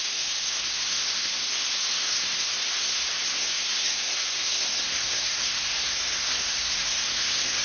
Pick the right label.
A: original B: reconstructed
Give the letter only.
B